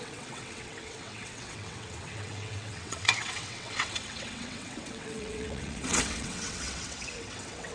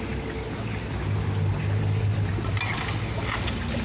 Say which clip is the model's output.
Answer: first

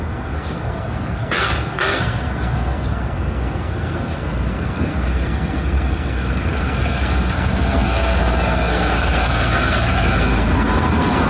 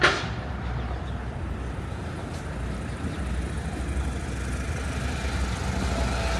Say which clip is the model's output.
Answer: first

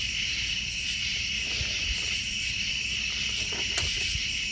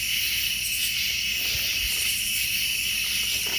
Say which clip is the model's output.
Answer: first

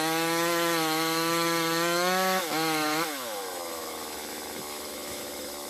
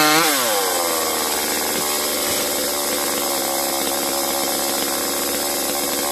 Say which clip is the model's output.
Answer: first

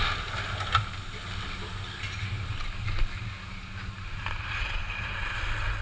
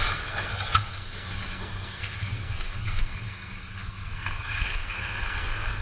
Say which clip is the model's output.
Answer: second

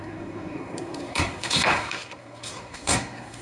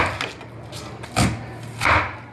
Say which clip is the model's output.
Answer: first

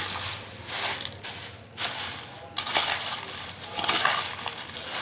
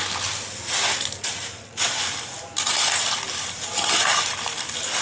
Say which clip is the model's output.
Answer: second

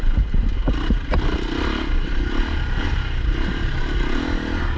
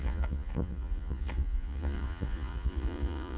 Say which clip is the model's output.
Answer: second